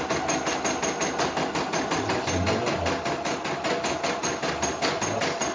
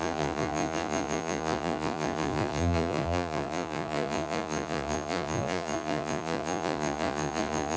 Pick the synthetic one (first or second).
second